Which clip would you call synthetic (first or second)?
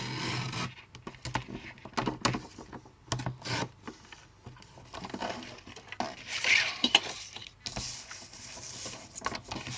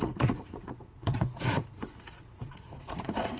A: second